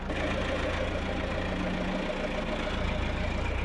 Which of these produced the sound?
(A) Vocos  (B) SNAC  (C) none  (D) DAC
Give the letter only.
C